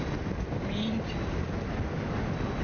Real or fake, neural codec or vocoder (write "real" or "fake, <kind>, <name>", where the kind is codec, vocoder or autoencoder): real